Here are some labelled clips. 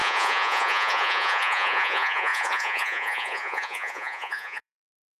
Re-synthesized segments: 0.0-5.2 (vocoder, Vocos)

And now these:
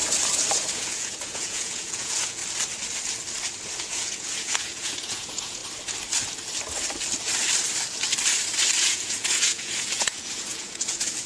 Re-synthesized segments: 0.7-2.4 (vocoder, Vocos); 3.8-5.6; 8.8-11.3